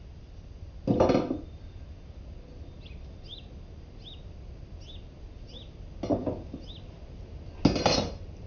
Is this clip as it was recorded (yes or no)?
yes